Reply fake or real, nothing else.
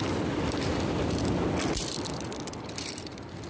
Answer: fake